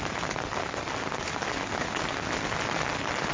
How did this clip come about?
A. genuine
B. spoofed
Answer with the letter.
A